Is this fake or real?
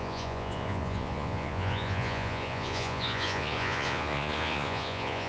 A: fake